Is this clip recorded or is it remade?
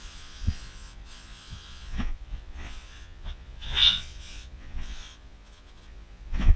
remade